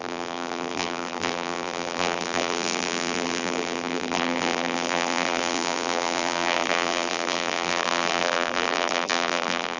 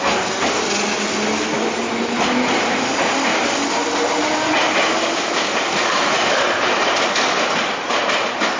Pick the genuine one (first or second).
second